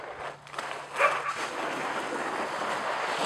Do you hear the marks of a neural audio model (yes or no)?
no